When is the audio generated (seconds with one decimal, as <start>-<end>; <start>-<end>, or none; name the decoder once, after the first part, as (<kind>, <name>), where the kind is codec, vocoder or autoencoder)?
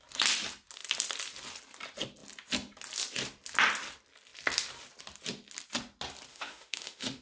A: 6.3-7.2 (autoencoder, DAC-VAE)